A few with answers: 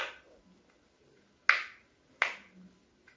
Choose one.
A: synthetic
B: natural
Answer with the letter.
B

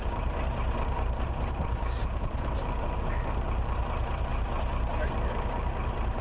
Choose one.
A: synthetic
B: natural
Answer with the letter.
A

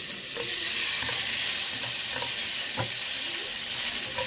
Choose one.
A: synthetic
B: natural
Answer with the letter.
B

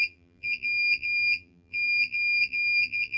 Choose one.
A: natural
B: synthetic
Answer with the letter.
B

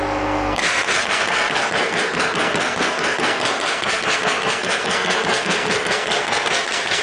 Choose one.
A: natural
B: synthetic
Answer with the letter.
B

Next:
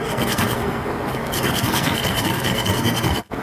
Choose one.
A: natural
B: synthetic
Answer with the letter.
B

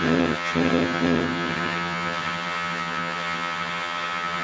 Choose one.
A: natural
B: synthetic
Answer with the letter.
B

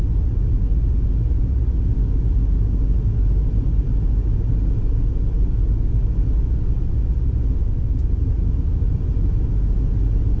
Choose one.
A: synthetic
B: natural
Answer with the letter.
B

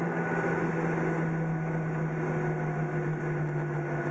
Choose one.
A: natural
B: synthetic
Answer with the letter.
A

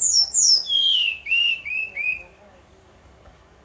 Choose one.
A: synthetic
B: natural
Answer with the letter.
A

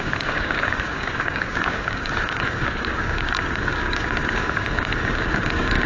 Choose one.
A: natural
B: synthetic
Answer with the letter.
B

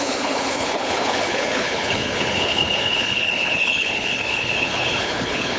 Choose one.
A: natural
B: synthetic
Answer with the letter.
B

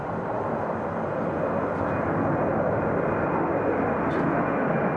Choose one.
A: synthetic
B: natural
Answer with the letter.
B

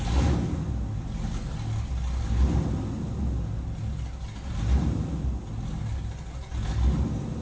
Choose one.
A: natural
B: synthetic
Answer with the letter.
A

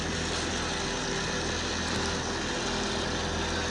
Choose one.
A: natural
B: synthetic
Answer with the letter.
A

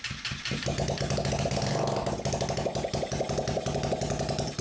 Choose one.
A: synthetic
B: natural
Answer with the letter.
B